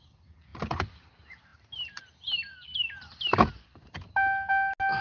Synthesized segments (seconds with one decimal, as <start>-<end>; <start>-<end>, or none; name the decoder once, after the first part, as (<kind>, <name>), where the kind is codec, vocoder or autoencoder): none